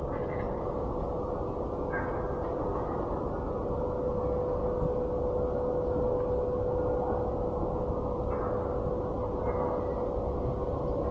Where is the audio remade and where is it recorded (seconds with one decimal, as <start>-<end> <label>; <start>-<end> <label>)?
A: 0.0-11.1 recorded